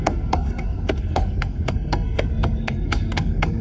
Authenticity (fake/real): fake